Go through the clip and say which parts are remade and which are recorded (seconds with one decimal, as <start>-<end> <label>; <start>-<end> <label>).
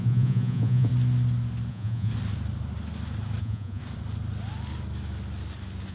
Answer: 0.0-0.9 remade; 0.9-1.7 recorded; 1.7-2.1 remade; 2.1-3.4 recorded; 3.4-3.8 remade; 3.8-5.9 recorded